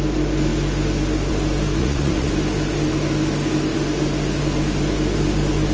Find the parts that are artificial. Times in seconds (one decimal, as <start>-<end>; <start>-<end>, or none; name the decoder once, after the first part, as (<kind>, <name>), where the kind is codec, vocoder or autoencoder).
1.8-2.3 (vocoder, Vocos)